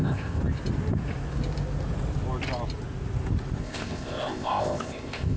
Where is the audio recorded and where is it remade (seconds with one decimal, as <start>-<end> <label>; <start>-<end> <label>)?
0.0-0.4 remade; 0.4-3.6 recorded; 3.6-5.4 remade